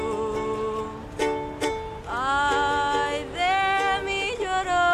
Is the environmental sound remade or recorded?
recorded